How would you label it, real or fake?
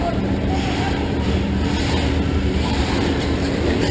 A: fake